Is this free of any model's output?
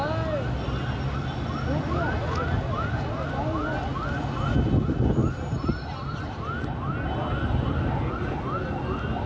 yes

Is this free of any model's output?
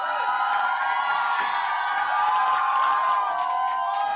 yes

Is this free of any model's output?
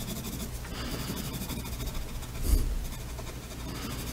yes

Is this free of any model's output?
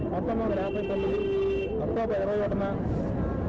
yes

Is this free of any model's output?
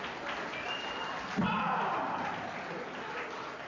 yes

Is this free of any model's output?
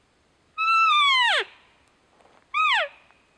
yes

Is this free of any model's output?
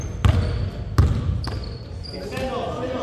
yes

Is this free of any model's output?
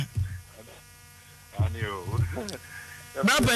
yes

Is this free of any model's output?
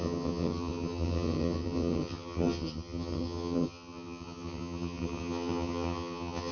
no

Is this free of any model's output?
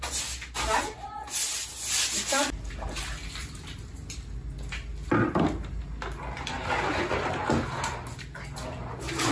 yes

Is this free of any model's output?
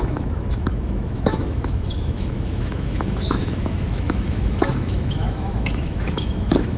no